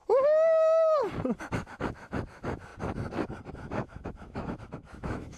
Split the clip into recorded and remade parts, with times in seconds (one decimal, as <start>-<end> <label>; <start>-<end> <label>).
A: 0.0-1.4 recorded; 1.4-2.7 remade; 2.7-3.5 recorded; 3.5-5.4 remade